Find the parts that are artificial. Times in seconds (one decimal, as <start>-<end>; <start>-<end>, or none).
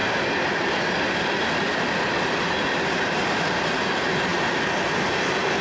none